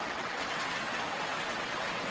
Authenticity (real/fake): fake